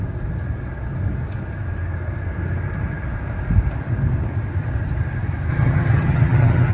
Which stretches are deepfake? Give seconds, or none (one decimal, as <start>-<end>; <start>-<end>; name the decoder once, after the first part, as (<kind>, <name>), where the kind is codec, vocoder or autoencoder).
5.5-6.7 (vocoder, HiFi-GAN)